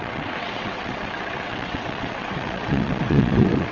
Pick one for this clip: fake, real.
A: fake